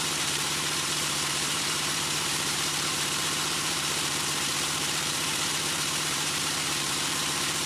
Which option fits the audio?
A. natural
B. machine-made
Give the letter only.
B